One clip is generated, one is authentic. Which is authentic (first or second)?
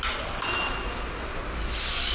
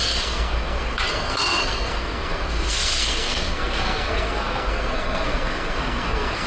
first